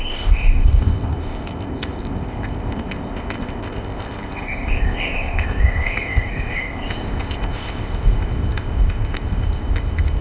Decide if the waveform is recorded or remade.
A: remade